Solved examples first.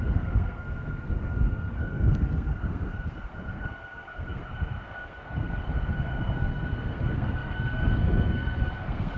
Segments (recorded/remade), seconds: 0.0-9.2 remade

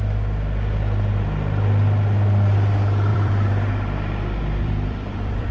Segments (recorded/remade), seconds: 0.0-3.1 recorded; 3.1-5.5 remade

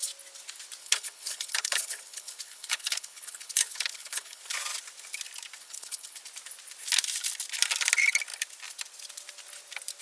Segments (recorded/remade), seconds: 0.0-0.8 recorded; 0.8-4.4 remade; 4.4-5.6 recorded; 5.6-6.2 remade; 6.2-10.0 recorded

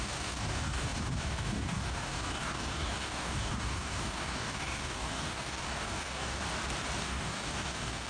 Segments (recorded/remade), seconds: 0.0-6.4 remade; 6.4-7.0 recorded; 7.0-8.1 remade

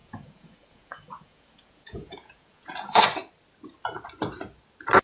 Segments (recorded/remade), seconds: 0.0-3.0 remade; 3.0-5.0 recorded

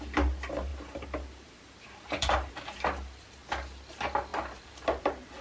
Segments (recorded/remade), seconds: 0.0-0.7 recorded; 0.7-2.5 remade; 2.5-5.4 recorded

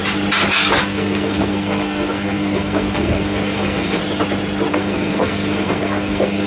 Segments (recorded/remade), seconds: 0.0-0.8 recorded; 0.8-4.0 remade; 4.0-4.7 recorded; 4.7-6.5 remade

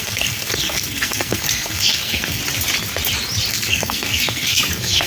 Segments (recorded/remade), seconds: 0.0-2.4 remade; 2.4-3.5 recorded; 3.5-5.1 remade